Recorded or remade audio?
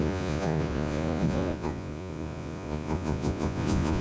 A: remade